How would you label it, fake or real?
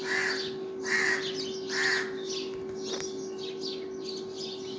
real